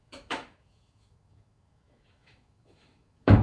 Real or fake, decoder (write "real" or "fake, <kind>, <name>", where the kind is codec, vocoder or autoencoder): fake, autoencoder, DAC-VAE